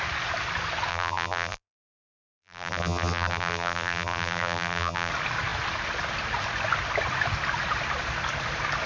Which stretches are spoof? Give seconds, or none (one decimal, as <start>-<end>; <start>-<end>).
0.9-5.1